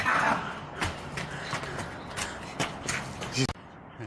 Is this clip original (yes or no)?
yes